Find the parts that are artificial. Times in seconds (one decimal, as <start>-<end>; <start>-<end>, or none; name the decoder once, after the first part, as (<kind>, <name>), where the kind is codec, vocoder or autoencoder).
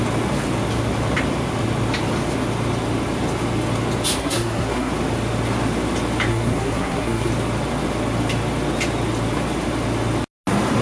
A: 4.2-4.9 (codec, SNAC); 6.3-7.3